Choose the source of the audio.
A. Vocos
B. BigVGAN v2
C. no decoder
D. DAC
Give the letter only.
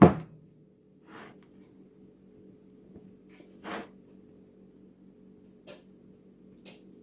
C